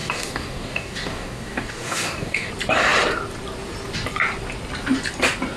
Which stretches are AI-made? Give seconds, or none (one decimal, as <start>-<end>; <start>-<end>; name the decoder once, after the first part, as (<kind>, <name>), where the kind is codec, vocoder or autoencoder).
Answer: 0.0-2.5 (codec, DAC)